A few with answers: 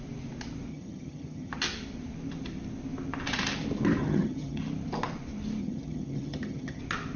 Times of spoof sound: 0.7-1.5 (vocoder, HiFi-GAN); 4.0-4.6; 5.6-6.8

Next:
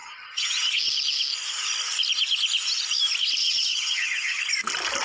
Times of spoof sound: 0.0-0.7 (vocoder, HiFi-GAN); 3.4-4.4

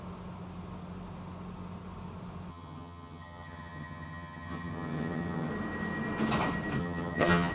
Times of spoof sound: 2.5-5.5 (vocoder, HiFi-GAN); 6.8-7.5

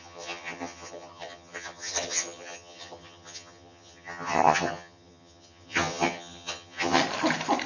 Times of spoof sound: 0.0-7.0 (vocoder, HiFi-GAN)

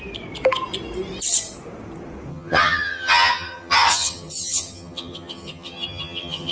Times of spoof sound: 2.3-6.5 (vocoder, HiFi-GAN)

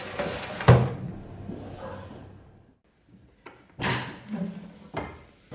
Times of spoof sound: none